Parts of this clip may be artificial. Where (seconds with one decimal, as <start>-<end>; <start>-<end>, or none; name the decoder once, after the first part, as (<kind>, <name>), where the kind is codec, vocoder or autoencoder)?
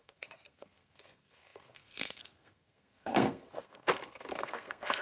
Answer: 0.0-5.0 (codec, SNAC)